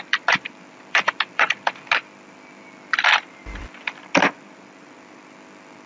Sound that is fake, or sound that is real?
fake